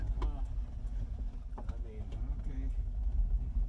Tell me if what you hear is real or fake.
real